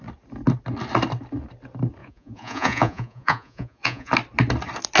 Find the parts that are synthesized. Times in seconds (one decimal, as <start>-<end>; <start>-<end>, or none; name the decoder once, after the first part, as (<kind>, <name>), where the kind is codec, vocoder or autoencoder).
2.0-4.1 (vocoder, Vocos)